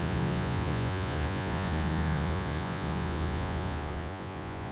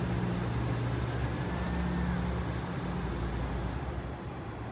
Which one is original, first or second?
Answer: second